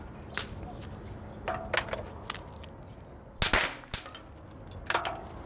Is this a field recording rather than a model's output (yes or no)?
yes